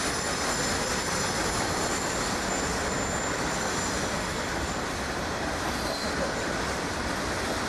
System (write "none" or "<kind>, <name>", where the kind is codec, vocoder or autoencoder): none